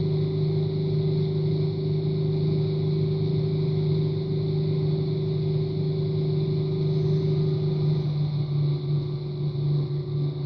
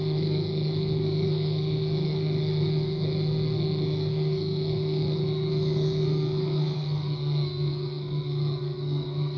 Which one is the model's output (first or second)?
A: second